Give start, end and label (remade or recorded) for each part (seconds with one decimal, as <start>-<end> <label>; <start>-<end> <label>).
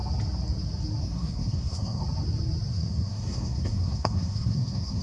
0.0-1.0 recorded; 1.0-2.0 remade; 2.0-2.7 recorded; 2.7-5.0 remade